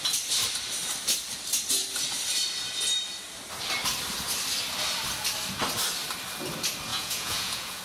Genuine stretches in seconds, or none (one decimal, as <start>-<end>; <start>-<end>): 0.0-6.9